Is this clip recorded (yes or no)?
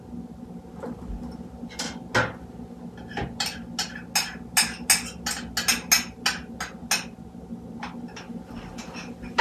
yes